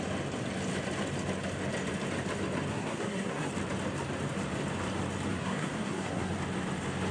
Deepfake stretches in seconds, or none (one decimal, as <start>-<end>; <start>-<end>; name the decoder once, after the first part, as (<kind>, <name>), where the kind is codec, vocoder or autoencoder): 2.7-3.5 (codec, SNAC); 5.3-6.3